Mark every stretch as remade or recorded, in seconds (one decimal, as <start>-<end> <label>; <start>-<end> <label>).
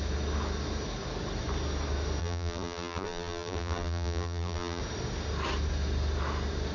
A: 0.0-2.2 recorded; 2.2-4.8 remade; 4.8-6.7 recorded